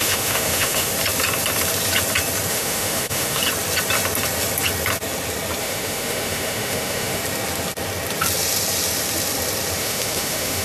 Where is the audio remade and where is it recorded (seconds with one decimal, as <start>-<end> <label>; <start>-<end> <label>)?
0.0-0.9 remade; 0.9-2.5 recorded; 2.5-3.4 remade; 3.4-5.6 recorded; 5.6-7.2 remade; 7.2-9.8 recorded; 9.8-10.6 remade